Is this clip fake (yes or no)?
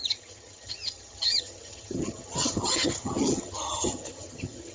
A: yes